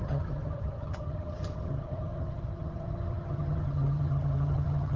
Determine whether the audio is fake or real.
fake